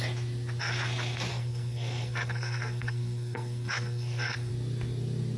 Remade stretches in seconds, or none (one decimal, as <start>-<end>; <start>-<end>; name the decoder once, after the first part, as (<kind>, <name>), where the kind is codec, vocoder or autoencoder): 1.3-4.5 (codec, SNAC)

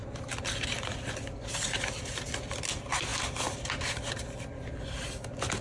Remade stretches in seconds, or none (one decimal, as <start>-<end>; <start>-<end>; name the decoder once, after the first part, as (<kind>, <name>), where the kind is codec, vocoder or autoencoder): none

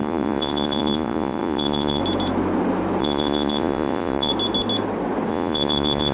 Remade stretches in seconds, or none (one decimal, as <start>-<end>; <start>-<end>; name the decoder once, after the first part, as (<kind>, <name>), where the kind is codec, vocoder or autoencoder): 0.0-2.0 (vocoder, Vocos); 3.0-4.3; 5.3-6.1

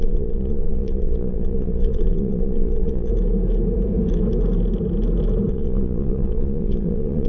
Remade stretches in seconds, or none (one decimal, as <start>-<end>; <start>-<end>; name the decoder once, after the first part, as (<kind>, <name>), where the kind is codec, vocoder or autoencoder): 0.0-3.1 (vocoder, Vocos); 5.5-7.3

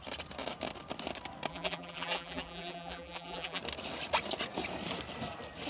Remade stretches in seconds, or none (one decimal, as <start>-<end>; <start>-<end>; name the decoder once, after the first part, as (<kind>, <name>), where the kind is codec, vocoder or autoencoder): 1.5-3.6 (vocoder, BigVGAN v2)

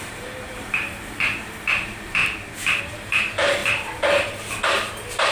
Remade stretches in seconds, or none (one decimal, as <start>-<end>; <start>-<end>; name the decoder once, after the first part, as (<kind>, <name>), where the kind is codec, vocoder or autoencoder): 0.0-2.2 (vocoder, BigVGAN v2); 2.8-3.6; 4.7-5.3

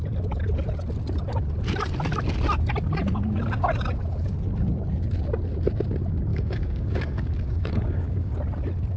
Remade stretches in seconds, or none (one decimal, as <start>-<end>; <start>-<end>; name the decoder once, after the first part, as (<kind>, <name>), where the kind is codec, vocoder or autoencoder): 6.3-8.3 (codec, DAC)